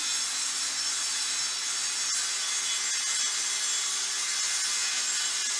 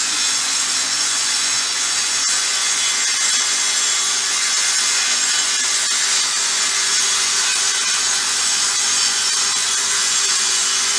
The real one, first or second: first